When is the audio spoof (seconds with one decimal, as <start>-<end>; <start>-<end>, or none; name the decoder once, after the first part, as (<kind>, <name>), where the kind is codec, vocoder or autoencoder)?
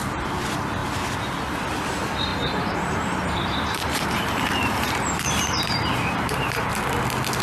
2.3-6.7 (vocoder, BigVGAN v2)